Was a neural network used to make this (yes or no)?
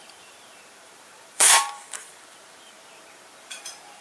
yes